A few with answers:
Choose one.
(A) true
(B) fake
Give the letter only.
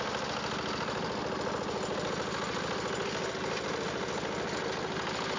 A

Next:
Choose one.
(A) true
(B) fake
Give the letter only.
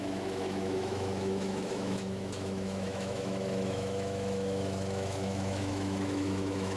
B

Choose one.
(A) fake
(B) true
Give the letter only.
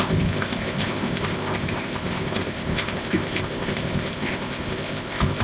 A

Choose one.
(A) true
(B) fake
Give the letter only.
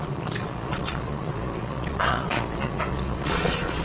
B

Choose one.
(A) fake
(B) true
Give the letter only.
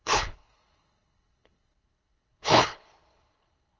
A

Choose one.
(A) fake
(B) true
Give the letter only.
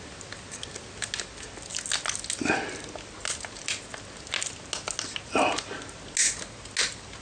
B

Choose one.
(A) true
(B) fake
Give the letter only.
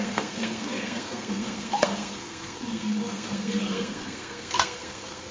B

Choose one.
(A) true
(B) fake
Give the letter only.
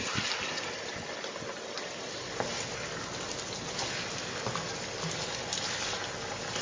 A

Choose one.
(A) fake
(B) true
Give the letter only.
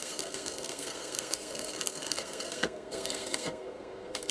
A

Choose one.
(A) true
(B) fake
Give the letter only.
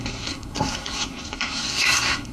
B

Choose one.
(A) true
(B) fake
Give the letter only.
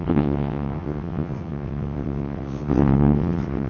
B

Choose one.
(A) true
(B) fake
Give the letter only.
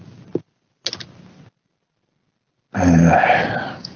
A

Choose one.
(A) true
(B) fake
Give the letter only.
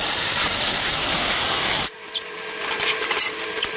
B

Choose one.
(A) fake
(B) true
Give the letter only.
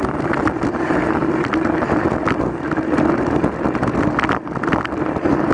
A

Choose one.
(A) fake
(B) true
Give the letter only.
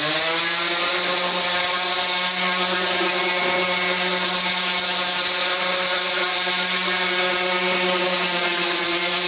B